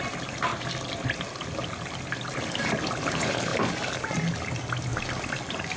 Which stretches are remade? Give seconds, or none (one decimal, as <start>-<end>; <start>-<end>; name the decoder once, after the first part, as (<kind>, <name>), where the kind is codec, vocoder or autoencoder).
none